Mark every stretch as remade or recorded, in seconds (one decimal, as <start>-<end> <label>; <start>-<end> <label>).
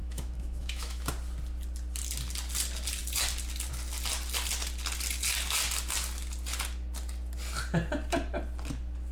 0.0-1.1 remade; 1.1-9.1 recorded